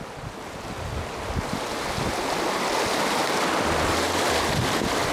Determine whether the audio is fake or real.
real